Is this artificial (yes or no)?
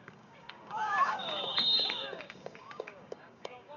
yes